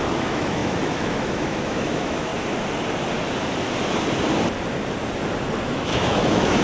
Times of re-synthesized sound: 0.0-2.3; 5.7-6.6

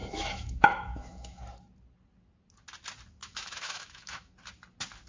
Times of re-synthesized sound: 0.0-1.4; 3.2-4.3

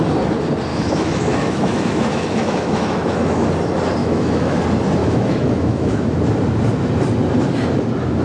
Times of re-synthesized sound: 0.7-3.5; 4.0-4.6; 5.0-6.1

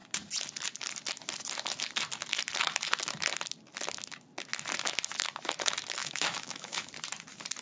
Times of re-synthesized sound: 6.0-6.9

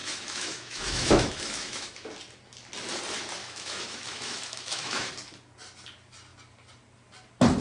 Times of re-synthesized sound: 0.0-2.1; 3.4-5.1